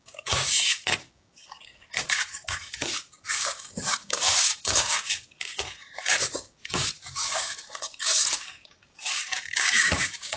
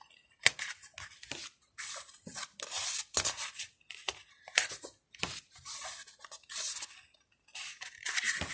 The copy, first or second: first